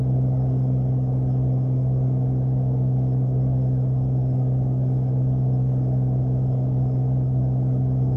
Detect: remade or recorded remade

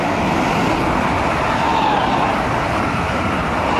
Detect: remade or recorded recorded